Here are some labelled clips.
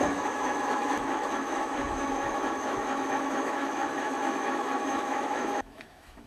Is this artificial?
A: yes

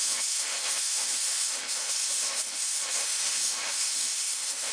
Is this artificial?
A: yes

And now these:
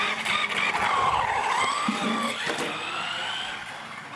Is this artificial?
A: no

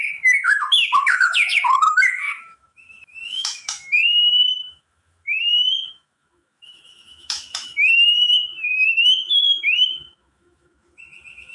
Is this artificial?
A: yes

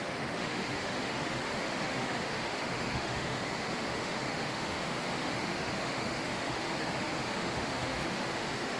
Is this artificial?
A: yes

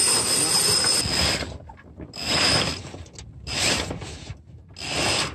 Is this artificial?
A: no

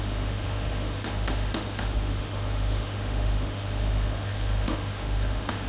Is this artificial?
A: yes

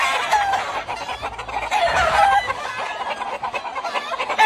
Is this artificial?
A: no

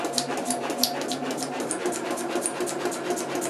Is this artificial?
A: no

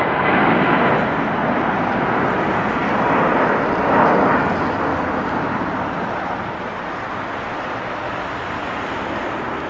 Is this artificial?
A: no